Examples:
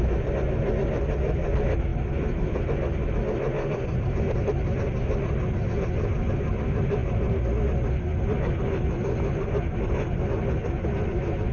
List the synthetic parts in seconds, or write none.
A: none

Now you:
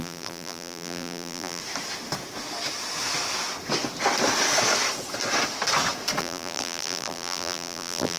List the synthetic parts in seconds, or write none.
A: 0.0-1.6 (vocoder, BigVGAN v2); 6.2-8.2

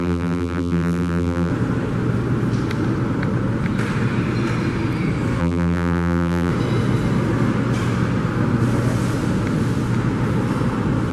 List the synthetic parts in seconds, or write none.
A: 0.0-1.5 (vocoder, BigVGAN v2); 5.4-6.5

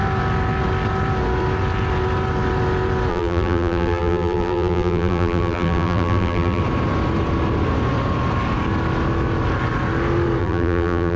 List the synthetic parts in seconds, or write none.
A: 3.1-6.6 (vocoder, BigVGAN v2); 10.4-11.2

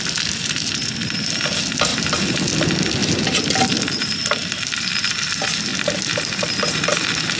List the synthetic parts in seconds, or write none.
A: 1.9-2.6 (vocoder, BigVGAN v2); 3.0-5.1; 5.7-6.6

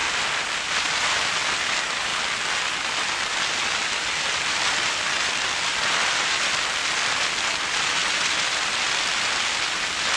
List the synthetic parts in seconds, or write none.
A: 0.0-2.1 (vocoder, BigVGAN v2); 2.7-6.8; 7.4-10.2

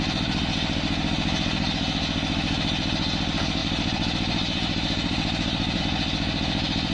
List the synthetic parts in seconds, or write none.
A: 3.6-5.8 (vocoder, BigVGAN v2)

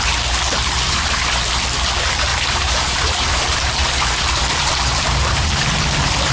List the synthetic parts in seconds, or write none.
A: 0.6-1.2 (vocoder, BigVGAN v2); 2.3-6.3